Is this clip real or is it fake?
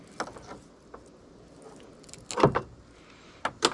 real